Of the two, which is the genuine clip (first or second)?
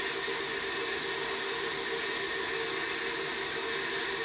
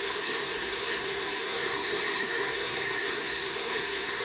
first